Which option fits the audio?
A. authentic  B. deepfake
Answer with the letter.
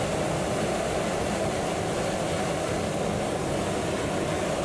A